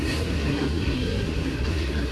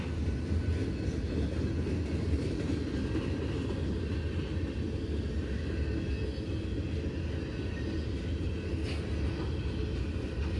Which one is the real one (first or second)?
second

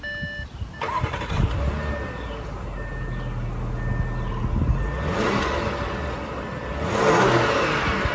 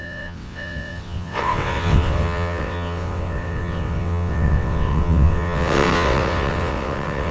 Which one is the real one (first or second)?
first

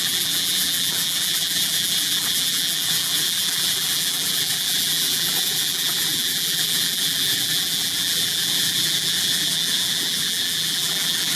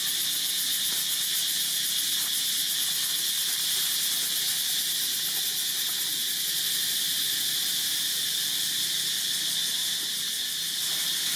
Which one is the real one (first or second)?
second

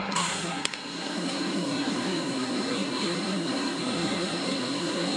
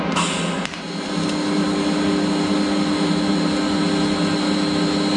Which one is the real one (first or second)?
second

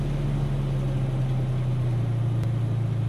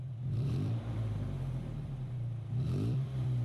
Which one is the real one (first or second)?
first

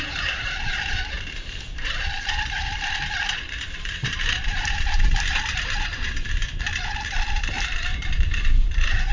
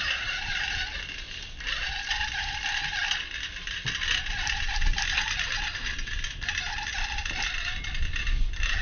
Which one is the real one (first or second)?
second